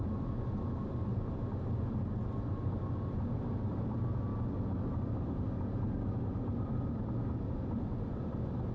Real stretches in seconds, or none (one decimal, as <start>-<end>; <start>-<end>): 0.0-8.7